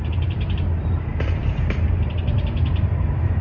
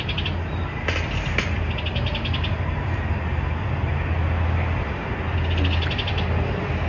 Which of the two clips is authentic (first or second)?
second